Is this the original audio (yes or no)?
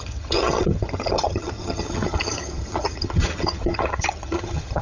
no